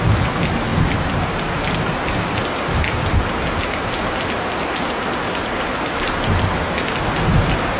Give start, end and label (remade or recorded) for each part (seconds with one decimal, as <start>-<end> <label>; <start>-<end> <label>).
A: 0.0-7.8 recorded